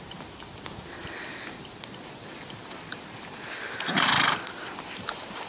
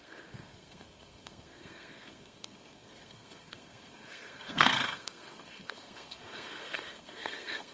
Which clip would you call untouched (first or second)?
first